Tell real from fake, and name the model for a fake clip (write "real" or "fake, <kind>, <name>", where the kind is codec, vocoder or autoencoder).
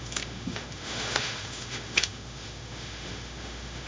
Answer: fake, autoencoder, DAC-VAE